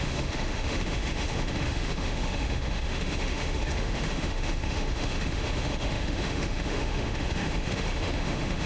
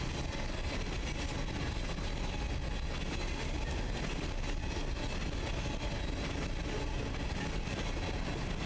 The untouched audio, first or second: second